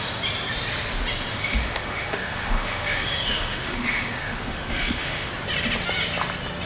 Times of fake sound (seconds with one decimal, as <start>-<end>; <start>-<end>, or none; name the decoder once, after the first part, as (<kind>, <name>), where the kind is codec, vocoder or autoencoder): 1.3-5.3 (autoencoder, DAC-VAE)